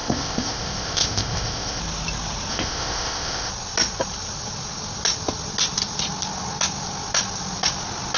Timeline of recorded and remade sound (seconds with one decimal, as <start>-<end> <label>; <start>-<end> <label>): 0.0-1.8 remade; 1.8-2.5 recorded; 2.5-3.5 remade; 3.5-8.2 recorded